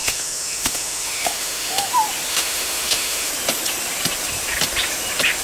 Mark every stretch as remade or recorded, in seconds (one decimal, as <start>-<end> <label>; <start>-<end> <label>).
0.0-1.9 remade; 1.9-2.3 recorded; 2.3-3.3 remade; 3.3-5.4 recorded